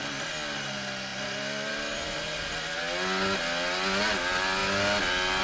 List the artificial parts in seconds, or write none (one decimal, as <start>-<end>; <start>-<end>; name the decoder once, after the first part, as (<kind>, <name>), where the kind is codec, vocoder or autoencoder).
none